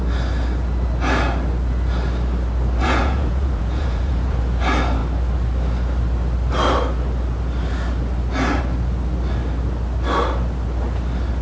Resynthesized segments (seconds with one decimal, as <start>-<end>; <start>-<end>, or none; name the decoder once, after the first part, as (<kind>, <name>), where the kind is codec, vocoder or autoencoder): 2.8-4.4 (vocoder, Vocos)